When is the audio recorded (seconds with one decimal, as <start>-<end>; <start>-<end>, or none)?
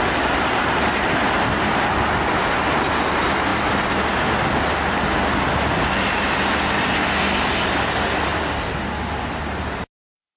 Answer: 0.0-10.4